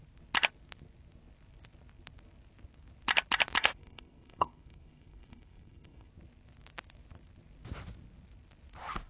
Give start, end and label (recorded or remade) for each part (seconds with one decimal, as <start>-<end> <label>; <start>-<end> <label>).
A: 0.0-3.6 recorded; 3.6-6.1 remade; 6.1-9.1 recorded